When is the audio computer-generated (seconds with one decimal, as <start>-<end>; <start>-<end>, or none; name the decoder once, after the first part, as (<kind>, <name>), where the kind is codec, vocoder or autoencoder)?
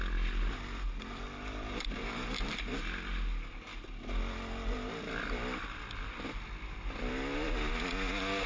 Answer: none